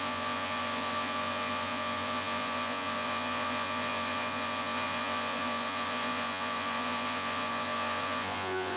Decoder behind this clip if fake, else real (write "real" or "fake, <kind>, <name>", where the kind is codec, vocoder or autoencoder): fake, vocoder, Vocos